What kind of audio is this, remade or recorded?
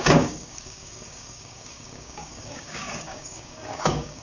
remade